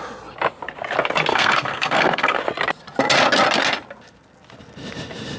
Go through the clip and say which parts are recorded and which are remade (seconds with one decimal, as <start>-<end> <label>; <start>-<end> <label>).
0.0-1.3 recorded; 1.3-2.4 remade; 2.4-5.4 recorded